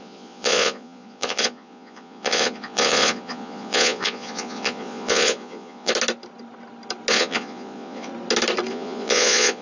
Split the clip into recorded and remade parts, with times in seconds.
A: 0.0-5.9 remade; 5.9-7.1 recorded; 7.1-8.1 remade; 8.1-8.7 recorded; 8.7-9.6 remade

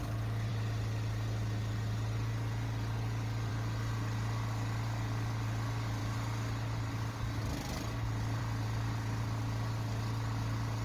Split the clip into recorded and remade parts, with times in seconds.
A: 0.0-10.8 recorded

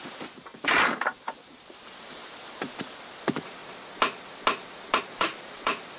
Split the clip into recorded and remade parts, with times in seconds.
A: 0.0-3.6 remade; 3.6-5.0 recorded; 5.0-6.0 remade

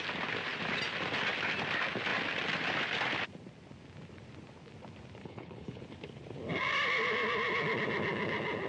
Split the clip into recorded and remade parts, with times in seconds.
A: 0.0-5.2 recorded; 5.2-5.8 remade; 5.8-8.7 recorded

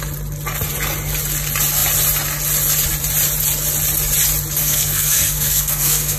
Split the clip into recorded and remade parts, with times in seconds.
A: 0.0-4.6 recorded; 4.6-6.2 remade

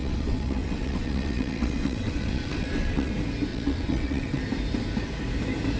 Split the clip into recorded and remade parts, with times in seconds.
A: 0.0-3.1 remade; 3.1-3.5 recorded; 3.5-4.4 remade; 4.4-5.8 recorded

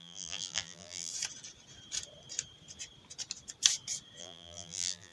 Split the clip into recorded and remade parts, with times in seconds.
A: 0.0-1.1 remade; 1.1-4.2 recorded; 4.2-5.1 remade